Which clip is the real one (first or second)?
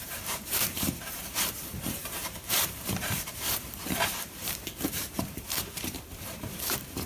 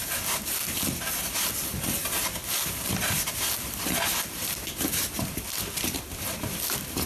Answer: second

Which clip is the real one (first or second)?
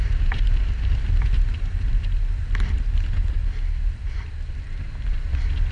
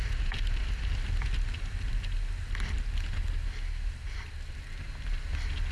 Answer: second